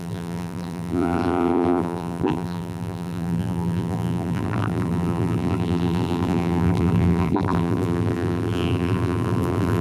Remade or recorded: remade